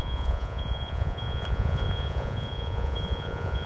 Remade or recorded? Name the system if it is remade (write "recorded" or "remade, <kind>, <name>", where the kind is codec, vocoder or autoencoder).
remade, vocoder, Vocos